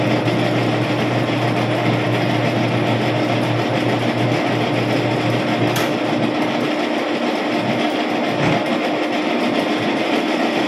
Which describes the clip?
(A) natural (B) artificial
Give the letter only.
A